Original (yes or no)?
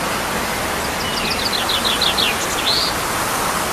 yes